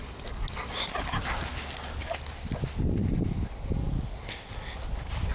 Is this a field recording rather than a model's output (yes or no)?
yes